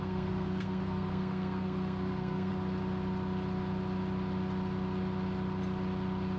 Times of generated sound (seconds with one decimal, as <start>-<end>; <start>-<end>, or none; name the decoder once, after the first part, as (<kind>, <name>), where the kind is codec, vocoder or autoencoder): 0.0-2.5 (codec, SNAC)